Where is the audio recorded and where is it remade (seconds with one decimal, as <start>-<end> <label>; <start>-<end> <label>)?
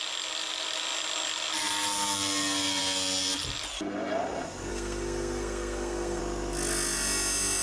0.0-4.7 recorded; 4.7-6.2 remade; 6.2-7.6 recorded